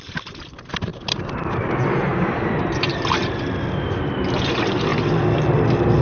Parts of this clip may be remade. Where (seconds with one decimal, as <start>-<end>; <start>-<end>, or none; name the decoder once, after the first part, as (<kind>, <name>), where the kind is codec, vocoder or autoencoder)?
0.9-1.5 (vocoder, BigVGAN v2); 2.1-4.2; 4.9-5.5